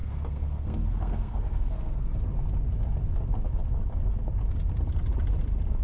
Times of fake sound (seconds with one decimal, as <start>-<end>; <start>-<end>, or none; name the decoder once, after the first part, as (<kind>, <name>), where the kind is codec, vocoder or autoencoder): 0.0-2.1 (codec, SNAC)

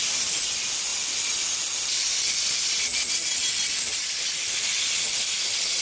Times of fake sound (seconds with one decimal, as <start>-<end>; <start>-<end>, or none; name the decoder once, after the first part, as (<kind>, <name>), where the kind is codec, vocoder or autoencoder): none

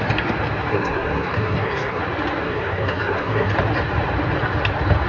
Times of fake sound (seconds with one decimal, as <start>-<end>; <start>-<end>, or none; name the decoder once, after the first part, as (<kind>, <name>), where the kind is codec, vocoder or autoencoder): 0.7-2.0 (codec, SNAC); 2.4-3.5

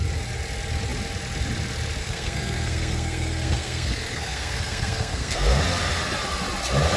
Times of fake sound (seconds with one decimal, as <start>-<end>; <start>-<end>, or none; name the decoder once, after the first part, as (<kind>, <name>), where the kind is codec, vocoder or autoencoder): 2.0-5.6 (codec, SNAC)

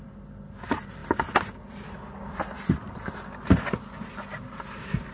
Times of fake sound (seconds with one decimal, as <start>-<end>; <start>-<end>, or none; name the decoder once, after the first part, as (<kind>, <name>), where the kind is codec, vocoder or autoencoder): none

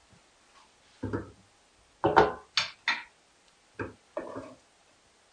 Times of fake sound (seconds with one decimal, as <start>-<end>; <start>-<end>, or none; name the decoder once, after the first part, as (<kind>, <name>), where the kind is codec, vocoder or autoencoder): none